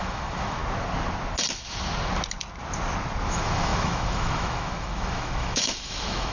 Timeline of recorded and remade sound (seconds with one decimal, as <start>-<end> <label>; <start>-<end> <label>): 0.0-0.6 remade; 0.6-3.3 recorded; 3.3-6.3 remade